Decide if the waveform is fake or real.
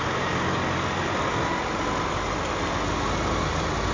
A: real